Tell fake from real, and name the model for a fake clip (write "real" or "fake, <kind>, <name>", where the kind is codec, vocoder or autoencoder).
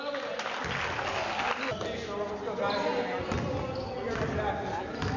real